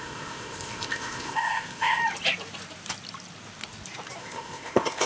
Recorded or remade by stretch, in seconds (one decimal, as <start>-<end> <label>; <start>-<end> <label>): 0.0-2.0 remade; 2.0-4.2 recorded; 4.2-5.1 remade

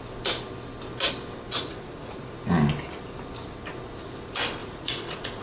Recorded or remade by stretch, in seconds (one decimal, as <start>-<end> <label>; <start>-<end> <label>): 0.0-1.7 recorded; 1.7-2.2 remade; 2.2-4.6 recorded; 4.6-5.4 remade